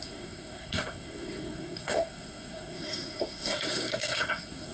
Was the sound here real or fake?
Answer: fake